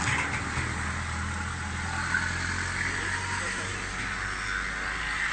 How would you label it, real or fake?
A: real